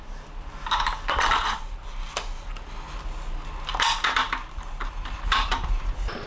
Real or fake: real